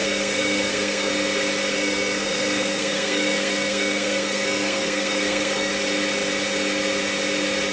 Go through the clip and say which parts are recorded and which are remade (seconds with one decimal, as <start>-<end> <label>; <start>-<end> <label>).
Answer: 0.0-1.1 remade; 1.1-1.7 recorded; 1.7-5.7 remade; 5.7-7.7 recorded